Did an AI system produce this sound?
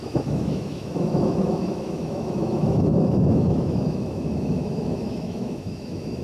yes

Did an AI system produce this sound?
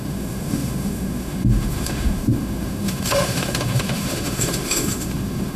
yes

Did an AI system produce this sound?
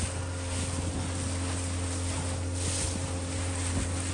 no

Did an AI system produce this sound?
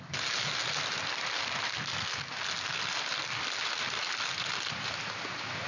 no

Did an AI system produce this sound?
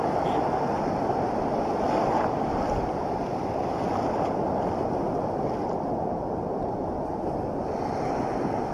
no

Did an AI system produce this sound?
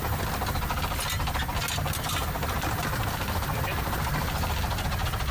no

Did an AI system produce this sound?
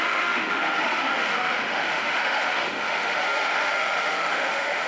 yes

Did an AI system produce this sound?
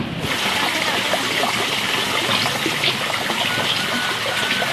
no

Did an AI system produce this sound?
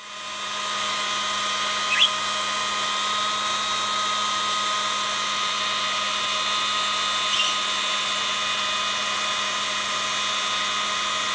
no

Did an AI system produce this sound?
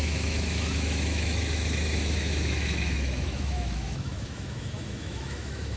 yes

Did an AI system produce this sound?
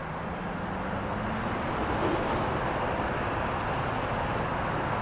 no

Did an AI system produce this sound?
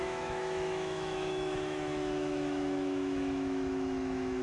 yes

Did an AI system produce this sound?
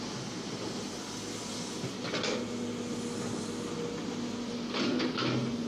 no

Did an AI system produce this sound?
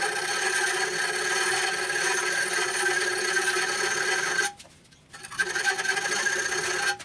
no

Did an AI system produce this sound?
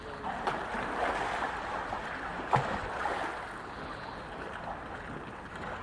no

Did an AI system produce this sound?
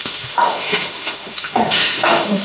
yes